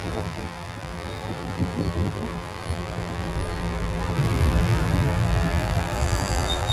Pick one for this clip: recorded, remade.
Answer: remade